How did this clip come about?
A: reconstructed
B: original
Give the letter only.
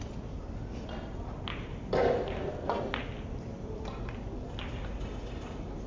B